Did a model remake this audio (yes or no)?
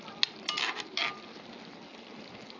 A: no